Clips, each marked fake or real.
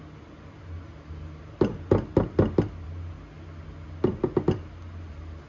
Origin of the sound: real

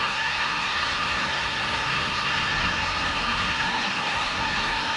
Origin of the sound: fake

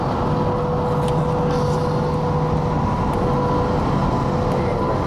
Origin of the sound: real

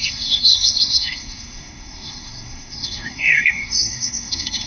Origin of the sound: fake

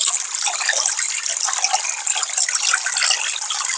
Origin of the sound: real